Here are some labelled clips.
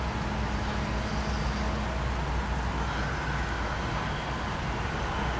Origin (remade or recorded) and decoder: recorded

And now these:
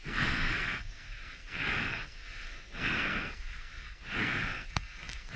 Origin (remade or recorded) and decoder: remade, codec, SNAC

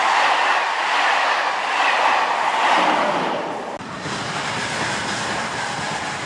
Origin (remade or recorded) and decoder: recorded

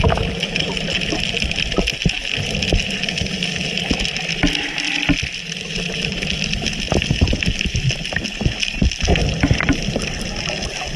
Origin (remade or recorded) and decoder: recorded